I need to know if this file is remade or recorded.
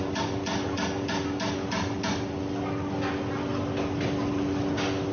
recorded